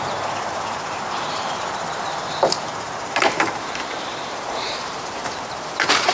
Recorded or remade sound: remade